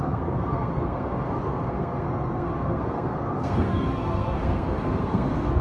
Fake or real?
fake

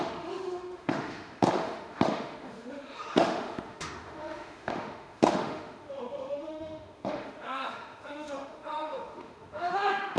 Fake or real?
fake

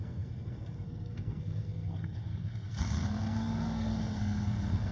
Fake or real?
fake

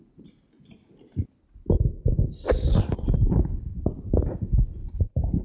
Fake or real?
real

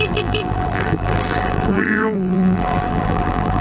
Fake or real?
fake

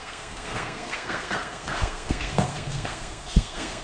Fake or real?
fake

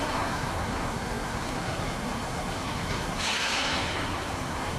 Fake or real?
fake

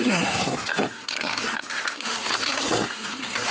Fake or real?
fake